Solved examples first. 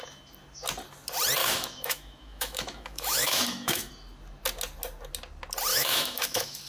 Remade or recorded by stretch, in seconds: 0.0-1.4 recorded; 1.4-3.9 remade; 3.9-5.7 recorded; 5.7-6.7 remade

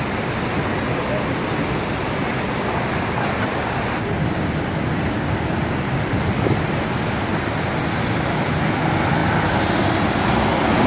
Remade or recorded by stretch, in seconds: 0.0-10.9 recorded

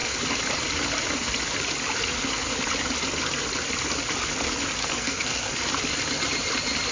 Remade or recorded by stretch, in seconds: 0.0-4.8 recorded; 4.8-5.5 remade; 5.5-6.9 recorded

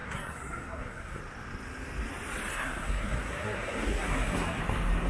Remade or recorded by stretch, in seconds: 0.0-1.2 remade; 1.2-2.5 recorded; 2.5-4.6 remade; 4.6-5.1 recorded